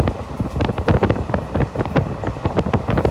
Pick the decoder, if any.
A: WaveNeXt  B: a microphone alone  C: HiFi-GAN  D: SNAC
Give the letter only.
B